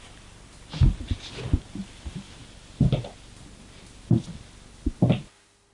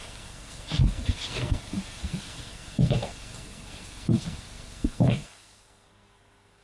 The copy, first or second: second